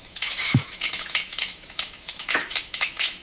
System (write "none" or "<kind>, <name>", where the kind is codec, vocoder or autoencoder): autoencoder, DAC-VAE